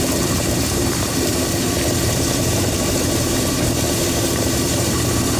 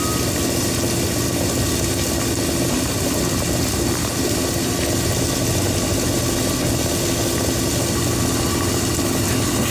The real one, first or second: second